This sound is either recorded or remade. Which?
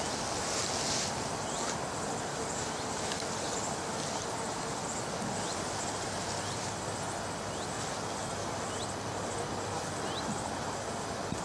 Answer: recorded